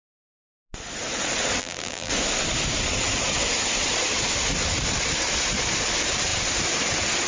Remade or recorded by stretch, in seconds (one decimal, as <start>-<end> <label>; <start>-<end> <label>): 0.0-1.6 recorded; 1.6-2.1 remade; 2.1-7.3 recorded